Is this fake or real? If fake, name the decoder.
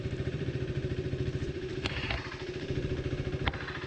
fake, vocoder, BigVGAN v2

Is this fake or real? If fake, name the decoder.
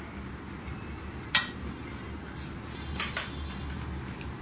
real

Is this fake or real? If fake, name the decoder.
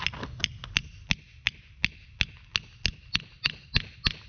real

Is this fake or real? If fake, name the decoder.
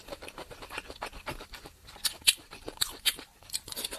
fake, vocoder, BigVGAN v2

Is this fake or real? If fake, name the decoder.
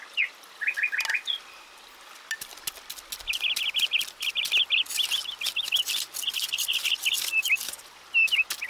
real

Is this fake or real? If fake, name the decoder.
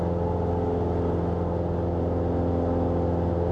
real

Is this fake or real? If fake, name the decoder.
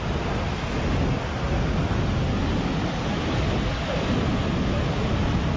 real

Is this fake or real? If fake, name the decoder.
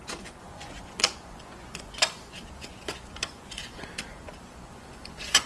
fake, vocoder, Vocos